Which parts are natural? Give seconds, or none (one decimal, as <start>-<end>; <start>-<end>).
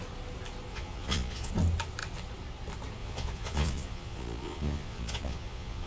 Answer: 0.0-0.7; 1.5-3.0